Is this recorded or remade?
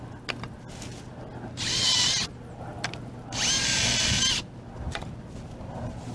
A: recorded